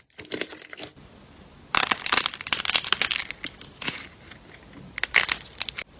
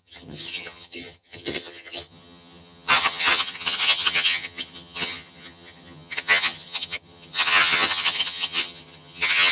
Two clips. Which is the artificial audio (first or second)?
second